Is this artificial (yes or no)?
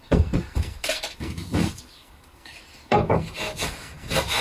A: yes